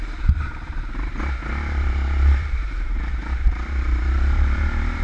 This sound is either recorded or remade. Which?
remade